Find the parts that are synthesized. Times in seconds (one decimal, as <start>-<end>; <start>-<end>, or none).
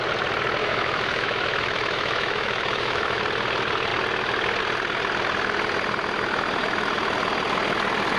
0.6-3.2